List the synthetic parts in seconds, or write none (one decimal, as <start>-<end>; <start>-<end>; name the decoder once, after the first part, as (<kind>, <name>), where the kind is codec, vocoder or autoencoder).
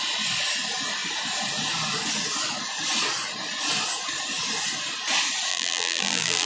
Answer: 5.5-6.5 (vocoder, BigVGAN v2)